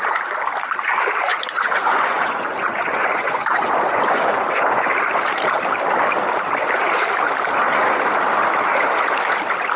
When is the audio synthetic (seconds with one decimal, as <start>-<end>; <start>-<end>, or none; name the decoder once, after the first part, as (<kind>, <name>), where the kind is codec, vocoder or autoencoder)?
1.3-4.9 (vocoder, Vocos)